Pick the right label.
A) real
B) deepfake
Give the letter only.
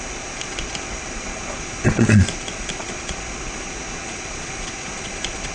B